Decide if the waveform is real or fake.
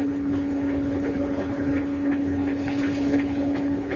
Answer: fake